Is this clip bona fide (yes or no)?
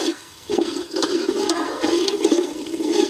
no